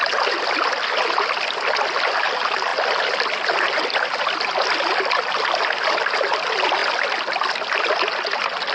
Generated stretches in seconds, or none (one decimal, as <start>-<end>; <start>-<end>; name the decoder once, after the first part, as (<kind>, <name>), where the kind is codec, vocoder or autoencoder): none

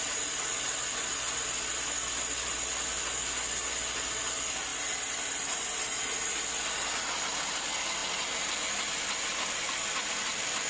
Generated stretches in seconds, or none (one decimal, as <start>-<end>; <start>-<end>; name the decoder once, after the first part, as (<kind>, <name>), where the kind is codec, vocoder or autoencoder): none

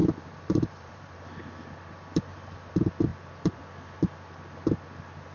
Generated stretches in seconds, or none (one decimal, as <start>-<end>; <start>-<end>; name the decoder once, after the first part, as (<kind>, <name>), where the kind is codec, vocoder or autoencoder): 0.0-1.2 (vocoder, BigVGAN v2); 1.9-2.7

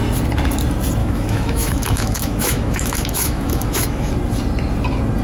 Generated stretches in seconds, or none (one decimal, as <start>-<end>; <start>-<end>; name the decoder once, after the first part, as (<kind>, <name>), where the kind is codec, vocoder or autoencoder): 1.0-4.1 (autoencoder, DAC-VAE)

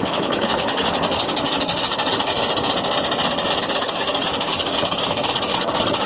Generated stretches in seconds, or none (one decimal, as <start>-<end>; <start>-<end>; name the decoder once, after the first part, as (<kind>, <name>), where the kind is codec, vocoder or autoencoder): 0.0-2.3 (codec, DAC); 3.6-6.1

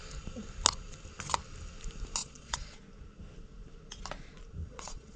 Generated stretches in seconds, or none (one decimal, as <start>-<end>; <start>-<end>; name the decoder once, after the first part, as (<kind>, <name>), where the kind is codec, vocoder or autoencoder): 2.2-2.8 (vocoder, Vocos); 4.6-5.2